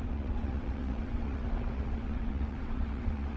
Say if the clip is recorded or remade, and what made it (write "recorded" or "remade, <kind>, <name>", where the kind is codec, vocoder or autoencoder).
remade, vocoder, WaveNeXt